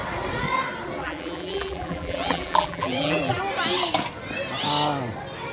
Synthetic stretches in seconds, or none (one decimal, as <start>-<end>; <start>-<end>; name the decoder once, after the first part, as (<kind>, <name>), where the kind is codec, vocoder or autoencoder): 1.0-3.4 (vocoder, BigVGAN v2)